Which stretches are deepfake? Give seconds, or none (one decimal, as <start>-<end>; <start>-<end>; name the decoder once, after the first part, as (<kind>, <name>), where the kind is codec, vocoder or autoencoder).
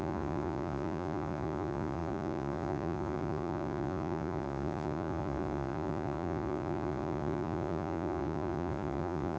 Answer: 0.0-9.4 (vocoder, Vocos)